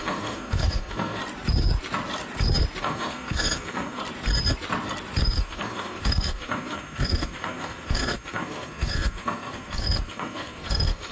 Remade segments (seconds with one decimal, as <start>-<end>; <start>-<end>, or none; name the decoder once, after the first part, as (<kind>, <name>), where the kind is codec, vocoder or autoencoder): 0.0-1.2 (codec, SNAC); 2.8-4.0; 5.2-11.1